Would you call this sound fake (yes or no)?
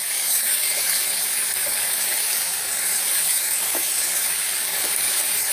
yes